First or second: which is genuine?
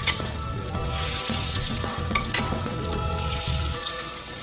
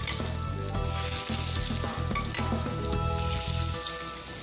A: second